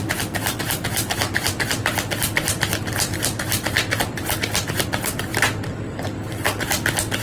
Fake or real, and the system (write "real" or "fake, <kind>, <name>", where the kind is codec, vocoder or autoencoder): real